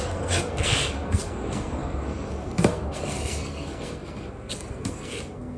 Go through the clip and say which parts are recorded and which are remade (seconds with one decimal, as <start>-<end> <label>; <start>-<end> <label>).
0.0-5.6 remade